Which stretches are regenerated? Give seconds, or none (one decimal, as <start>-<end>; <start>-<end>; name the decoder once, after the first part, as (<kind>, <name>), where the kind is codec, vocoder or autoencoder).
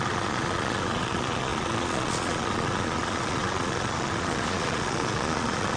0.0-5.8 (vocoder, Vocos)